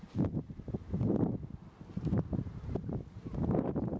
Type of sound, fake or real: fake